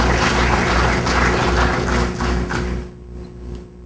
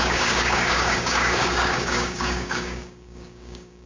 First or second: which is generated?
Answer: second